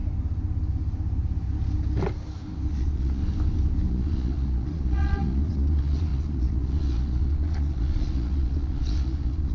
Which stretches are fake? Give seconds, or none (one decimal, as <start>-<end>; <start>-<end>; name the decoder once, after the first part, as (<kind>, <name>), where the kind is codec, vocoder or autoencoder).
2.7-3.2 (vocoder, Vocos); 3.9-9.5